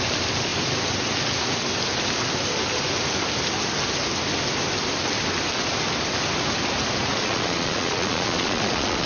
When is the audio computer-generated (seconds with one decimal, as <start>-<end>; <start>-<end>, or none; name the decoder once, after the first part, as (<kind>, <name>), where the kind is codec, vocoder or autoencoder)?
7.1-9.1 (vocoder, Vocos)